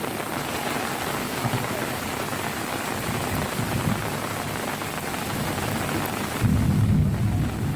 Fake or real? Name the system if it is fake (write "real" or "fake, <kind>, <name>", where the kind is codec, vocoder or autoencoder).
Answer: real